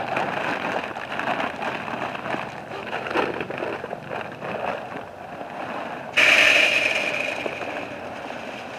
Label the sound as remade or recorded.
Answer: remade